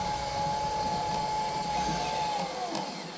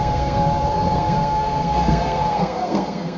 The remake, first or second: second